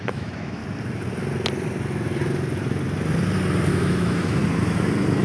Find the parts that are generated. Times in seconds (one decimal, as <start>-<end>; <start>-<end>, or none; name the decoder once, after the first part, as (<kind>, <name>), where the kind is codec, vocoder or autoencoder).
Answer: 0.0-0.6 (autoencoder, DAC-VAE); 3.7-4.4